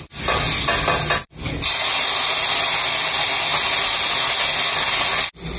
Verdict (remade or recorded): recorded